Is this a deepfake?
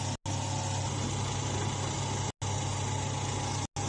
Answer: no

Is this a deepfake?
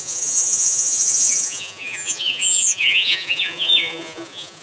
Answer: yes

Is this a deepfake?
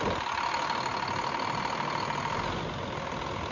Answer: no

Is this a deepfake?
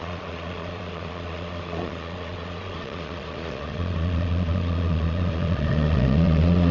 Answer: yes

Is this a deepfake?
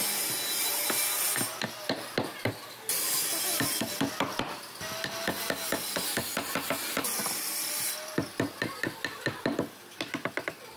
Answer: no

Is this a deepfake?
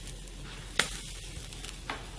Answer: no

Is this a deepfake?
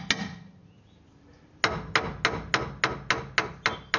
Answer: no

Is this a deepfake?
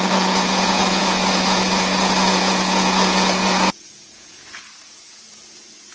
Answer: yes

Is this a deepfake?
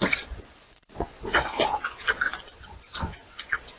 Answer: yes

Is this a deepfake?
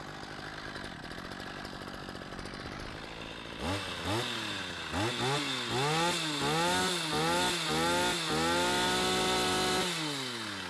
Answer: no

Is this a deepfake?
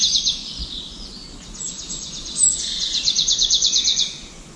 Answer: yes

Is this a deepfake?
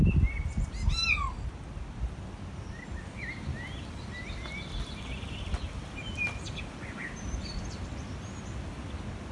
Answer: no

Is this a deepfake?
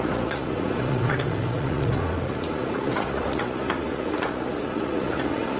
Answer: yes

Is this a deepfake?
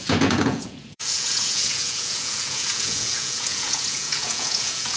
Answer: yes